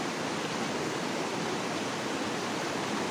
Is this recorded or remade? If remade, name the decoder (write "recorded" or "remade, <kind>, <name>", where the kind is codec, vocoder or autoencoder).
recorded